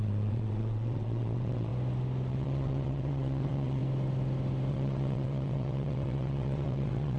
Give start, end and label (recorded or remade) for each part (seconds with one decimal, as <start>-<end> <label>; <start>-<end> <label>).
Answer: 0.0-1.7 remade; 1.7-2.3 recorded; 2.3-3.8 remade; 3.8-4.7 recorded; 4.7-7.2 remade